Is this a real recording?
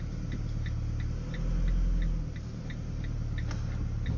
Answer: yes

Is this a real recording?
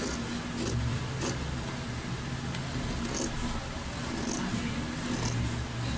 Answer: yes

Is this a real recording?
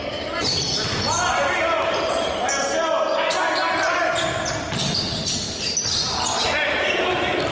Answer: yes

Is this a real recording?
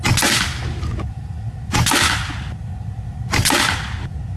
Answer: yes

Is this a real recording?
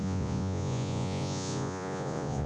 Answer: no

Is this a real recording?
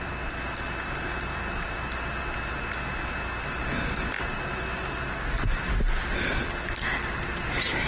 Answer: yes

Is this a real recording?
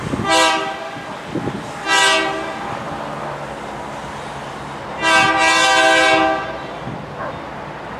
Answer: yes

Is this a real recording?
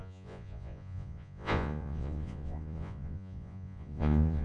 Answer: no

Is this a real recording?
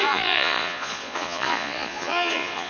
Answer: no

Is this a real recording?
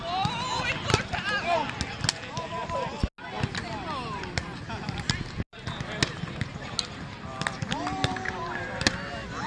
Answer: yes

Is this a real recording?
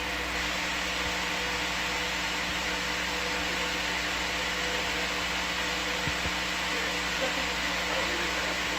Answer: yes